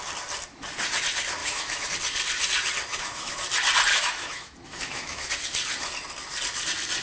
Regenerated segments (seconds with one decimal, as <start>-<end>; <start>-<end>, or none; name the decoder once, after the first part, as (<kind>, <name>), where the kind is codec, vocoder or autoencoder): 1.4-1.9 (autoencoder, DAC-VAE); 2.9-3.4; 3.9-5.3